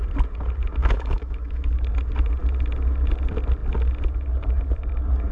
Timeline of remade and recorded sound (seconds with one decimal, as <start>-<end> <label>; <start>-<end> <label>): 0.0-0.8 recorded; 0.8-1.6 remade; 1.6-5.3 recorded